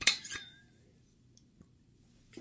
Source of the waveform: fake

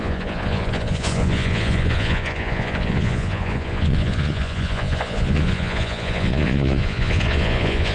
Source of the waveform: fake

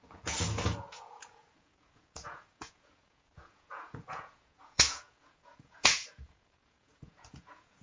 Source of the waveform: fake